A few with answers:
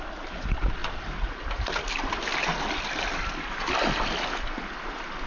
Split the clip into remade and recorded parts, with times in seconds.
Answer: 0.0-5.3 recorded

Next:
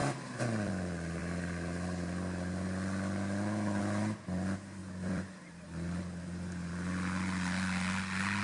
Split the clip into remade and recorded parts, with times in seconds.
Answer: 0.0-0.7 remade; 0.7-4.8 recorded; 4.8-6.7 remade; 6.7-8.4 recorded